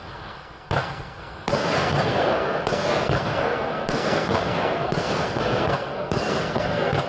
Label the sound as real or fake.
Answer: fake